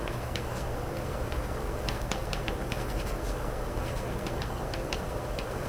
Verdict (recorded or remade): remade